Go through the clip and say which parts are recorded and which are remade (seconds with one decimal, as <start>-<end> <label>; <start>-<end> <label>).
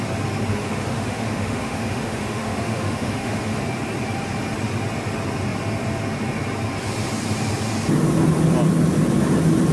0.0-0.5 recorded; 0.5-3.6 remade; 3.6-9.7 recorded